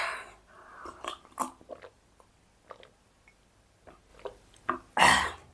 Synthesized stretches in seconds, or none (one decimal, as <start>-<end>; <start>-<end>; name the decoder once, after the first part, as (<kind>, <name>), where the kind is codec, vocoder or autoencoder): 0.7-1.4 (vocoder, BigVGAN v2)